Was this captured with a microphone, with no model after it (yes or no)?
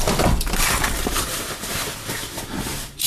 yes